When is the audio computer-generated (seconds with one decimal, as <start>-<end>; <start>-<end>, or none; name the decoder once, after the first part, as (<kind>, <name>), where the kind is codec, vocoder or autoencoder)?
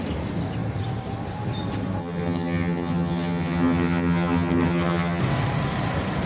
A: 2.0-5.2 (vocoder, HiFi-GAN)